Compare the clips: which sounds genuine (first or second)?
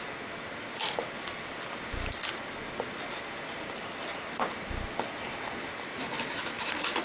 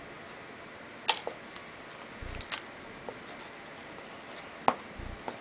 second